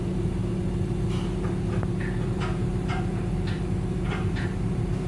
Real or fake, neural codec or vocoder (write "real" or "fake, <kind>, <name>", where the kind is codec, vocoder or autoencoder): real